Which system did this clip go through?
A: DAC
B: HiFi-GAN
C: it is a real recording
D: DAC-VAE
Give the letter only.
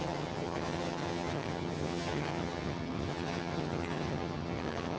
B